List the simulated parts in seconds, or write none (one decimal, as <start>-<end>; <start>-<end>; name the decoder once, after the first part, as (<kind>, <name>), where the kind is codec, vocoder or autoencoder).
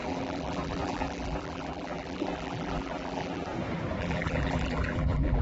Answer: 0.0-3.5 (vocoder, BigVGAN v2); 4.0-5.4